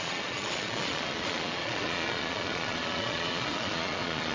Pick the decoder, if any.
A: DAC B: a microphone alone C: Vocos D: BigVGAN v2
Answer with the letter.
C